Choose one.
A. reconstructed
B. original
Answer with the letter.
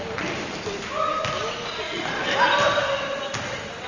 B